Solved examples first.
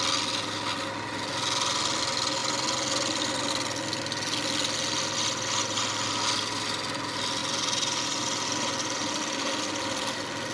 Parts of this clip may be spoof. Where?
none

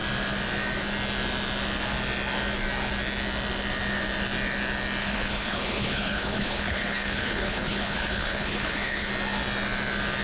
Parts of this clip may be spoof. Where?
5.0-9.1 (codec, HILCodec)

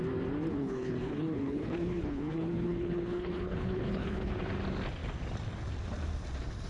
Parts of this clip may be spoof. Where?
0.5-4.3 (codec, HILCodec)

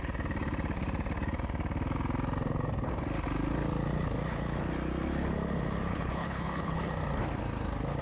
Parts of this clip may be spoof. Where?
5.9-6.9 (codec, HILCodec)

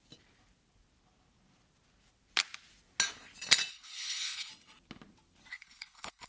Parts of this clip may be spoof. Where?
3.7-4.5 (codec, HILCodec); 5.5-6.3